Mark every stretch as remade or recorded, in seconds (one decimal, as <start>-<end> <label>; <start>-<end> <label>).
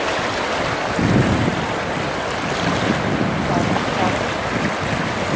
0.0-5.4 recorded